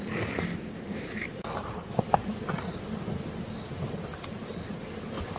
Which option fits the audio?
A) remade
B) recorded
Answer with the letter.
B